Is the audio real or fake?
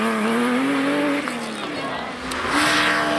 real